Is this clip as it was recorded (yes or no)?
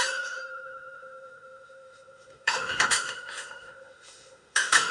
no